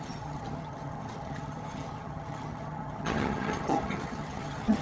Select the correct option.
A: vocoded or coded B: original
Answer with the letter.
A